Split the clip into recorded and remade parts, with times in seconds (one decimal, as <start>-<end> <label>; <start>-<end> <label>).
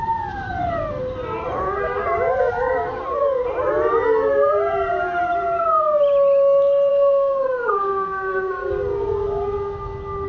0.0-6.9 recorded; 6.9-8.7 remade; 8.7-10.3 recorded